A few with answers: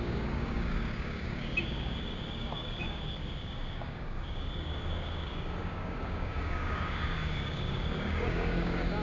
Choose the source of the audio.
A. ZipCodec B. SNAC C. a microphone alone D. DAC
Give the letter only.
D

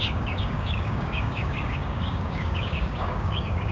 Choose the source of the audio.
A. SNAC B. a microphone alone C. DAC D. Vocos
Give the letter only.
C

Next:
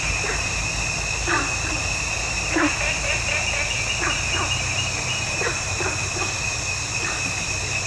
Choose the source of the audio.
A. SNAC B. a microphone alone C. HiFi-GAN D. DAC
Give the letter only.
B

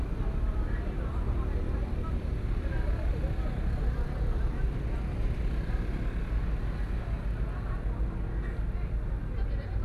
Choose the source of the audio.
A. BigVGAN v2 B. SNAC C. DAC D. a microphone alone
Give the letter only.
D